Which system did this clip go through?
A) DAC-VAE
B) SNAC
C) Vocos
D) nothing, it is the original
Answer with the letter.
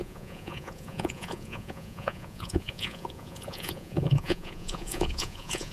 C